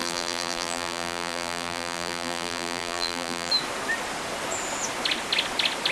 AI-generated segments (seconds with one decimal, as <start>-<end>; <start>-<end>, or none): 0.0-3.5